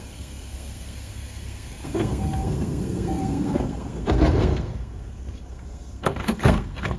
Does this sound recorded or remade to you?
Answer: remade